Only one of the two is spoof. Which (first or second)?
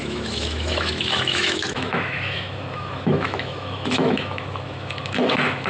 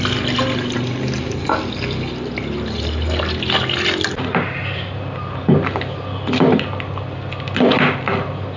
first